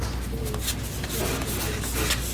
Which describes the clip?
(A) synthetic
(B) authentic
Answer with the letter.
B